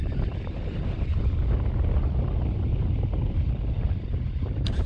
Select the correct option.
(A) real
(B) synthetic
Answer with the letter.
A